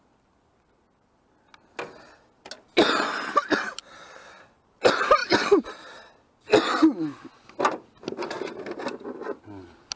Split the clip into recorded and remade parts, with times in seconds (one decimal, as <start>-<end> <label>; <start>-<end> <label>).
0.0-10.0 recorded